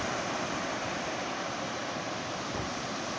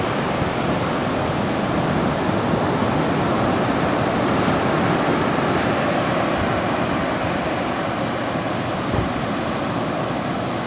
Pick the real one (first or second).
second